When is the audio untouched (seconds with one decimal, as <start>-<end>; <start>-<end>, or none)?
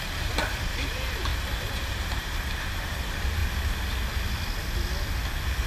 3.4-5.7